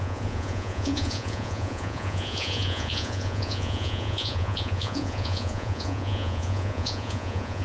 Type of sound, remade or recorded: remade